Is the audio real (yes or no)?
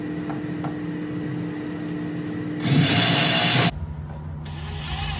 yes